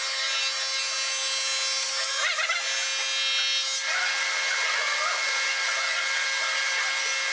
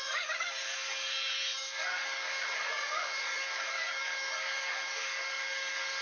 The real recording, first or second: first